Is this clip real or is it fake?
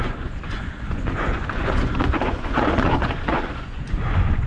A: fake